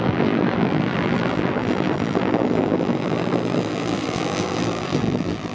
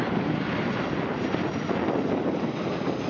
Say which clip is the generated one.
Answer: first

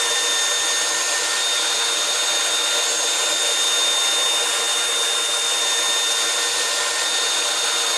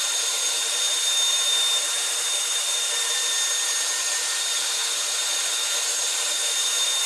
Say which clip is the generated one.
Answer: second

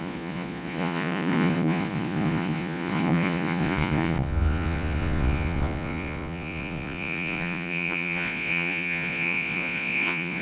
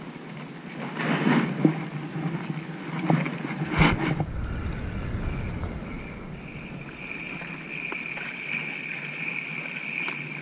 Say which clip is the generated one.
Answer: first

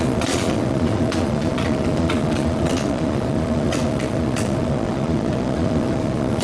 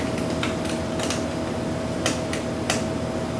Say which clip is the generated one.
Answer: first